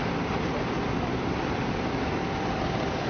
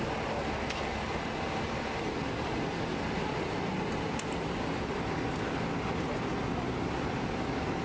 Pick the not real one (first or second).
first